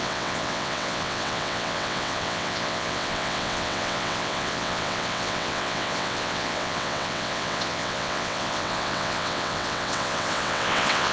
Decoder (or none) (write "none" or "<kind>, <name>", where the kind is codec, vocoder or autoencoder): vocoder, WaveNeXt